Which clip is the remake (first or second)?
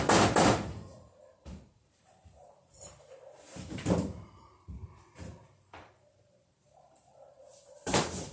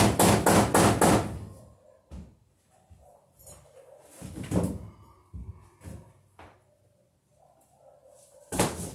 first